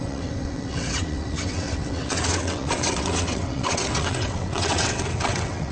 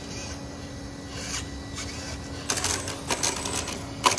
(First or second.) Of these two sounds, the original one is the second